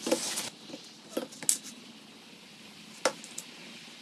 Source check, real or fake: real